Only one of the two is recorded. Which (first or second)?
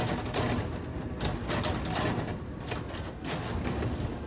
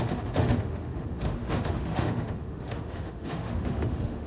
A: first